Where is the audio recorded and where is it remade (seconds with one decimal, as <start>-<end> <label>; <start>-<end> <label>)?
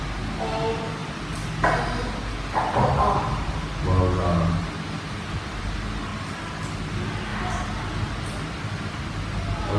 0.0-9.8 recorded